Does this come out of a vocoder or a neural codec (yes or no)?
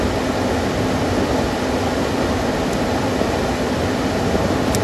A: no